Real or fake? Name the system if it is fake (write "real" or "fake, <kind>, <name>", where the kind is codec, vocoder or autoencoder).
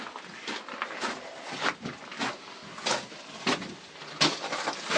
real